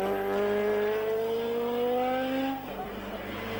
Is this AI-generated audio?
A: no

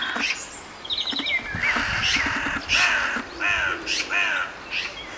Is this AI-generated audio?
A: no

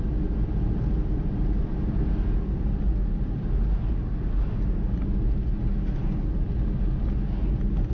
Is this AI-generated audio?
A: no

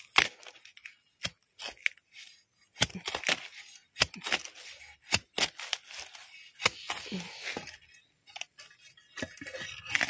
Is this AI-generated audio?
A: no